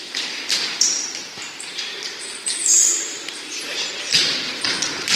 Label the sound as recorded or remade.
remade